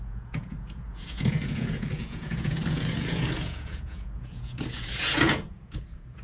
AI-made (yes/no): yes